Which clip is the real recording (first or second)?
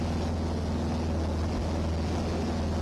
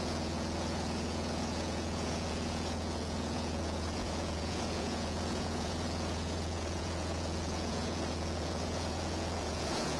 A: first